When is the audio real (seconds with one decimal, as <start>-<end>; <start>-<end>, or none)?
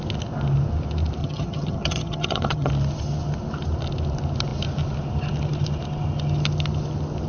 0.0-1.2; 2.7-7.3